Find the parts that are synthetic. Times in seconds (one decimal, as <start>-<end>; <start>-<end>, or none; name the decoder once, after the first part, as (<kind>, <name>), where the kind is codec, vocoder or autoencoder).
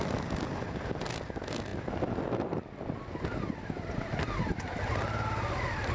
none